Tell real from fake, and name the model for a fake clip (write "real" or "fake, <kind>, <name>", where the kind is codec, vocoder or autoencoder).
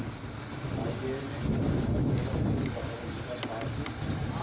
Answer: real